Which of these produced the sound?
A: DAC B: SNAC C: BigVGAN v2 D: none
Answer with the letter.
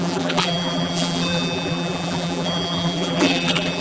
C